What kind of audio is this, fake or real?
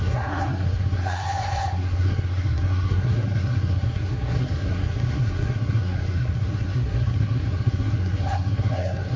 fake